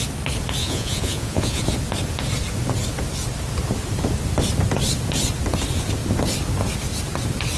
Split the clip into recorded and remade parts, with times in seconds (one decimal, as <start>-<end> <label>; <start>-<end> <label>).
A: 0.0-0.6 recorded; 0.6-1.6 remade; 1.6-7.6 recorded